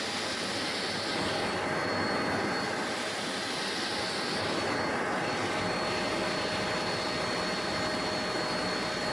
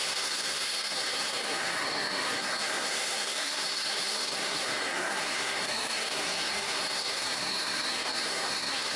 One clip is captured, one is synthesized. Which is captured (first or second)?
first